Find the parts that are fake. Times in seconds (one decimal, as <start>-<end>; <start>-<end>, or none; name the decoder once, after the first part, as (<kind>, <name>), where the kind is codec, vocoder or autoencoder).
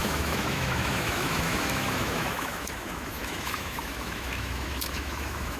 0.0-5.6 (autoencoder, DAC-VAE)